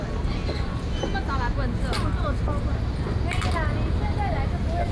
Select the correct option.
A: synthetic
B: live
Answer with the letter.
B